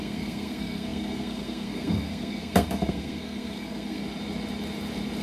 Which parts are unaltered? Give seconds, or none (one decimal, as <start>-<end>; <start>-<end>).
4.0-5.2